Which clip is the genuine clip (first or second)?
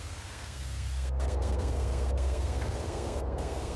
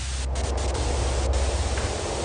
second